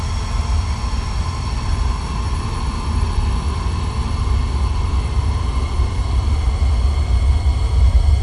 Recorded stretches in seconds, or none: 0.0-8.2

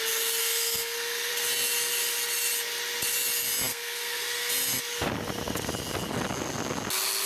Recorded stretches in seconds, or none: 0.0-0.4; 1.3-3.7; 4.5-7.3